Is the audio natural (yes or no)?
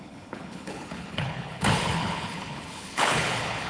no